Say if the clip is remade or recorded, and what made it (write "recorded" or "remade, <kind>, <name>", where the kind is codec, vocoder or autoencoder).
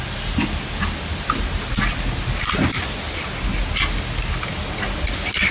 recorded